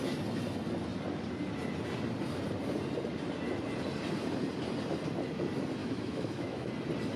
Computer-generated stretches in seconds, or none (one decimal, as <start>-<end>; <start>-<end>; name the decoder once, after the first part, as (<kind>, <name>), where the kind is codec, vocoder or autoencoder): 5.8-6.7 (autoencoder, DAC-VAE)